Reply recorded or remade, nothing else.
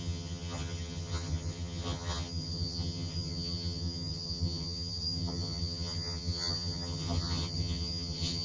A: remade